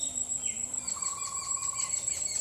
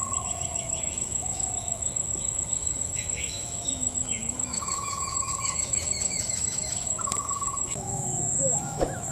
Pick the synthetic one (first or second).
second